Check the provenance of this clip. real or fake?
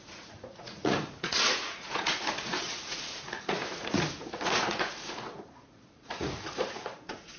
fake